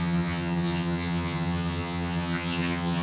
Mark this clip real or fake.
fake